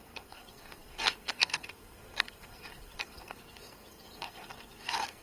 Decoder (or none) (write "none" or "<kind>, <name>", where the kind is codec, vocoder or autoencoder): codec, SNAC